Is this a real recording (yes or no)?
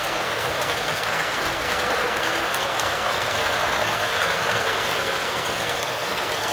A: no